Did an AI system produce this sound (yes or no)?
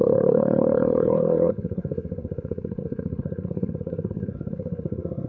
yes